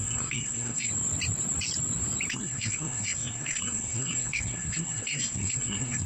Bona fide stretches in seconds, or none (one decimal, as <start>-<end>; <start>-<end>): 0.9-2.3